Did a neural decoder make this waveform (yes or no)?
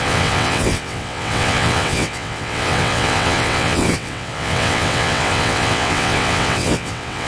yes